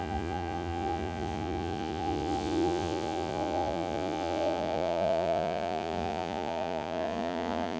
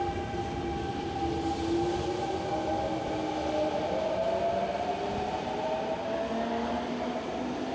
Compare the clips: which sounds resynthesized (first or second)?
first